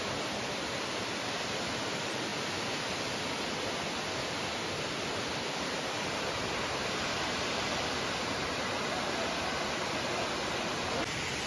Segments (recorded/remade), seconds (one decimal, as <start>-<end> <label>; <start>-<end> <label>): 0.0-11.5 recorded